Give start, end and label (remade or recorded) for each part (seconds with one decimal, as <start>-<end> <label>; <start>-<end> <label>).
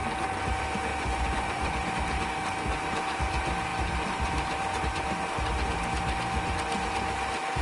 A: 0.0-0.9 recorded; 0.9-1.9 remade; 1.9-7.6 recorded